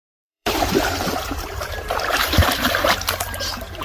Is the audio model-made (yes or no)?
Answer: yes